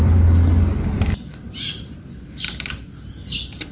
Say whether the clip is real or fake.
real